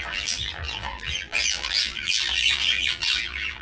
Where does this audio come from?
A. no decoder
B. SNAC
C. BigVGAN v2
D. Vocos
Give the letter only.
C